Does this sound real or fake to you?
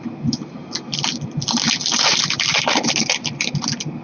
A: real